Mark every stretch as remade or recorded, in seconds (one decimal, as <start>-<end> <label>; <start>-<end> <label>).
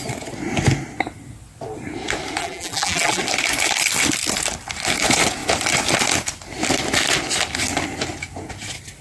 0.0-2.4 recorded; 2.4-3.2 remade; 3.2-9.0 recorded